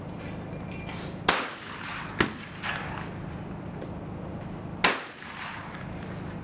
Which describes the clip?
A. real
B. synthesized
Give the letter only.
A